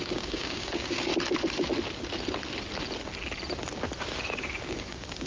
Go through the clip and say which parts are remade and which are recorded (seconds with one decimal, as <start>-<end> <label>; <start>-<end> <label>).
0.0-1.1 remade; 1.1-4.3 recorded; 4.3-5.3 remade

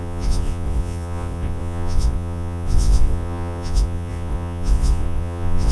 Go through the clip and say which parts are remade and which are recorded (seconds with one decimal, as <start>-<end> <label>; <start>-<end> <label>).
0.0-5.7 remade

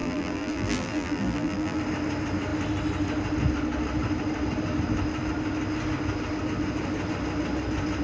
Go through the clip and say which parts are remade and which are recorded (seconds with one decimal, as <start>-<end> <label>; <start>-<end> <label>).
0.0-1.8 remade; 1.8-8.0 recorded

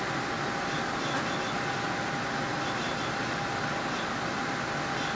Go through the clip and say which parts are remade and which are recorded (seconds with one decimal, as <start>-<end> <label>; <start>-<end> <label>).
0.0-2.5 recorded; 2.5-3.5 remade; 3.5-5.1 recorded

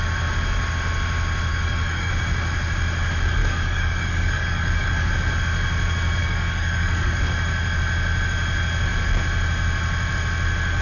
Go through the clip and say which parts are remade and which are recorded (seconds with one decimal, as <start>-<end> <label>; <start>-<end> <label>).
0.0-1.5 recorded; 1.5-2.1 remade; 2.1-3.4 recorded; 3.4-5.1 remade; 5.1-6.2 recorded; 6.2-7.2 remade; 7.2-10.8 recorded

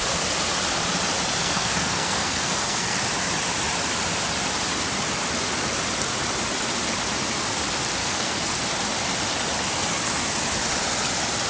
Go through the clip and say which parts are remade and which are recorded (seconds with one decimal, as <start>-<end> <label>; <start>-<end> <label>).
0.0-1.4 recorded; 1.4-3.0 remade; 3.0-8.0 recorded; 8.0-8.6 remade; 8.6-11.5 recorded

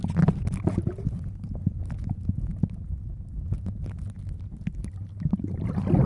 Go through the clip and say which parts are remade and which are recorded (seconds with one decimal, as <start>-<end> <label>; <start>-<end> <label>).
0.0-6.1 recorded